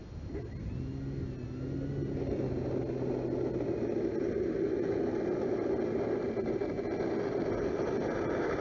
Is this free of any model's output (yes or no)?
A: yes